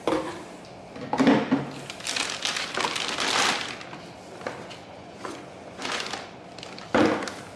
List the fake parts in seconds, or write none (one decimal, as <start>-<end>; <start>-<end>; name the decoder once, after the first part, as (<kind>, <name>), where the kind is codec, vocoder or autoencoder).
4.8-6.1 (vocoder, Vocos)